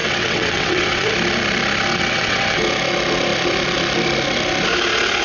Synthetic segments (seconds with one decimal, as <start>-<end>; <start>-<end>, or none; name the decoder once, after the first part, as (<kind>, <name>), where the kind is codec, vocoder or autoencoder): 0.0-1.1 (vocoder, WaveNeXt); 1.9-2.6